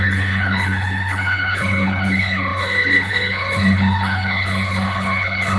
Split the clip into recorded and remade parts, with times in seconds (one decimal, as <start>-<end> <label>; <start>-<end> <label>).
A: 0.0-5.6 remade